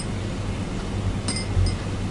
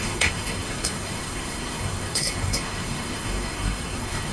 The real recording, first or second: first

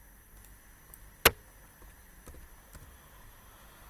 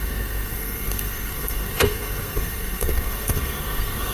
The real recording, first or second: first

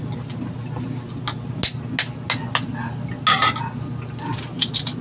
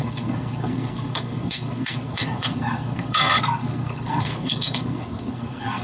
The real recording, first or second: first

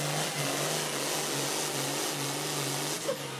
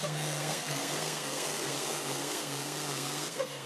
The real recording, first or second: first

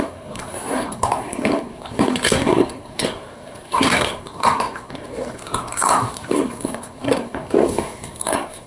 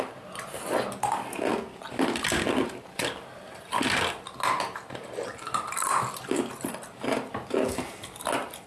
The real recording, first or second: second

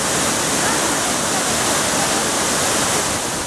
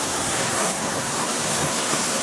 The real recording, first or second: first